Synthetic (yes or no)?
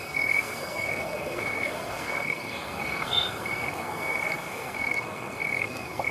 yes